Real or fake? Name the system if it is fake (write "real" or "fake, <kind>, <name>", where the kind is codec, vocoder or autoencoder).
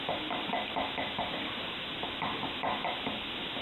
real